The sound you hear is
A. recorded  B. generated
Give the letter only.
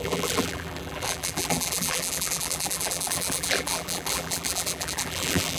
B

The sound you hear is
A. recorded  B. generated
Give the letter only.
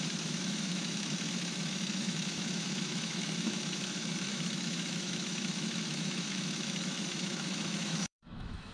B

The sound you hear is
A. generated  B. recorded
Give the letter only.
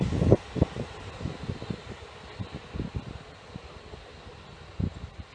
B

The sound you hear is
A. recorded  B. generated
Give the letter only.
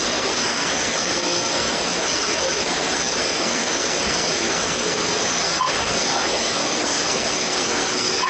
B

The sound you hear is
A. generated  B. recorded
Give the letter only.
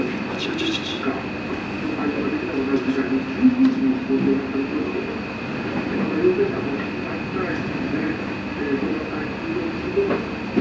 B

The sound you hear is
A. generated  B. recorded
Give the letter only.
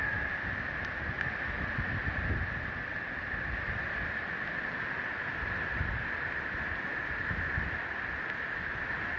B